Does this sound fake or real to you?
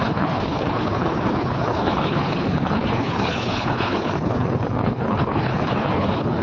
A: fake